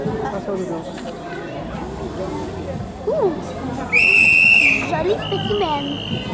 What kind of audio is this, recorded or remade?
recorded